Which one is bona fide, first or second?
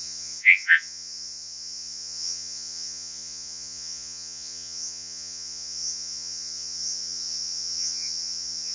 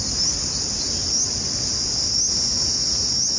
second